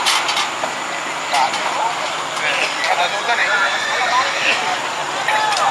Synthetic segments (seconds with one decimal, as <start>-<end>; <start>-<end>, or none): 3.4-4.1